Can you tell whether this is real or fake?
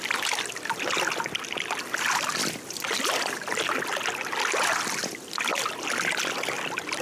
real